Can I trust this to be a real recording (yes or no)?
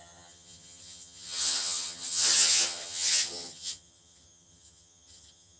no